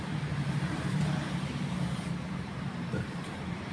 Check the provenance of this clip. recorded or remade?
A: remade